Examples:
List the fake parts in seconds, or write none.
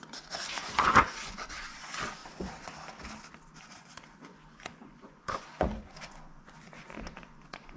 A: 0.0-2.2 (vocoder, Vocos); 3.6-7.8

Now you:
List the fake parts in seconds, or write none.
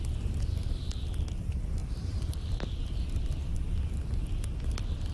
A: 0.6-1.3 (vocoder, BigVGAN v2); 1.8-2.8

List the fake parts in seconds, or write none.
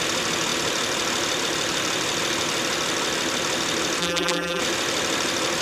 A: 4.0-4.6 (vocoder, BigVGAN v2)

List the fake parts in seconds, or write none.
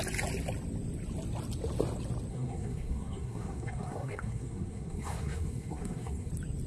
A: 2.3-6.3 (codec, SNAC)